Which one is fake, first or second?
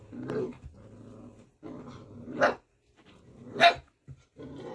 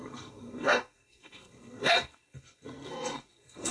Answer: second